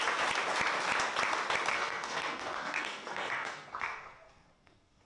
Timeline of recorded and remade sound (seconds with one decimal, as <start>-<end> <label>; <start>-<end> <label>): 0.0-1.7 recorded; 1.7-5.1 remade